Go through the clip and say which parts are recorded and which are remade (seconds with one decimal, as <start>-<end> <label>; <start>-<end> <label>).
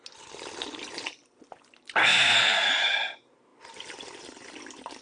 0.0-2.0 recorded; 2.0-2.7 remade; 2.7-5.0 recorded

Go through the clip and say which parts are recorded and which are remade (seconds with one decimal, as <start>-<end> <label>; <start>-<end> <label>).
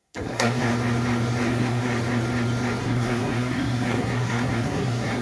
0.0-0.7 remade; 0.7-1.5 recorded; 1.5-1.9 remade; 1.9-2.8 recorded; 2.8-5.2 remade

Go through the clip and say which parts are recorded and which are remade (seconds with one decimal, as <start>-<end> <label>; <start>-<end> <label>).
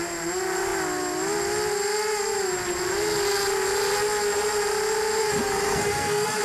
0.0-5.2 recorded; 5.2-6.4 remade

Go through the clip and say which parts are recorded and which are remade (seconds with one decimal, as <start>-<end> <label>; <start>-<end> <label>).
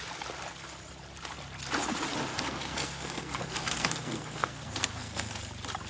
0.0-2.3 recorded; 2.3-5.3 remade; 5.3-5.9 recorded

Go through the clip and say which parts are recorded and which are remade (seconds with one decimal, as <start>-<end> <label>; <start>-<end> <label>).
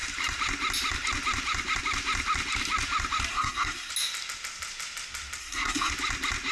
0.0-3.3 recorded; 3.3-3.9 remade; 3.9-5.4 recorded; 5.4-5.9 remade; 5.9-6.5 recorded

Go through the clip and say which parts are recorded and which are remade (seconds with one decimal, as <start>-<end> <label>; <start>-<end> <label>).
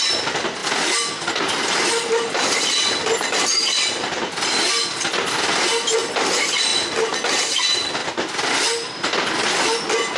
0.0-10.2 recorded